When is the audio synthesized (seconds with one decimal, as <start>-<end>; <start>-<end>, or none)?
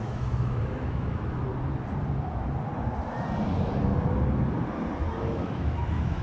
0.0-1.5; 5.2-6.2